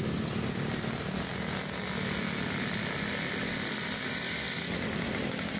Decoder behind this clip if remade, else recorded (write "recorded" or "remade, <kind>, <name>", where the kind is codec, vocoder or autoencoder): recorded